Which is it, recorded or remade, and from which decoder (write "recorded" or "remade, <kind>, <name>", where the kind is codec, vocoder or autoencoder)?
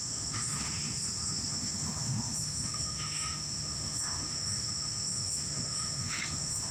remade, autoencoder, DAC-VAE